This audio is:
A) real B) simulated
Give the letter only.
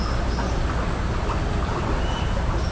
A